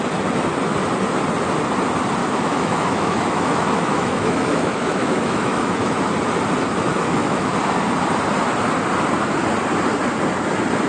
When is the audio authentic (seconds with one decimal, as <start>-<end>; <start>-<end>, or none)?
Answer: 0.0-2.2; 6.0-6.9; 7.5-10.9